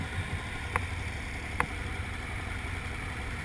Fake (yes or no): no